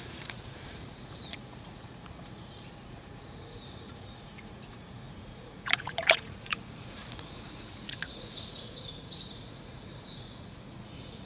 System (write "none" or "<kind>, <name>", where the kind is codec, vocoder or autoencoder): vocoder, Vocos